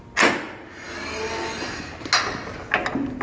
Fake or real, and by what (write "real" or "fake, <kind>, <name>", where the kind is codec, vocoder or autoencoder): real